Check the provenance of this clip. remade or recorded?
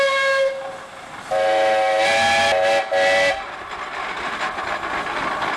recorded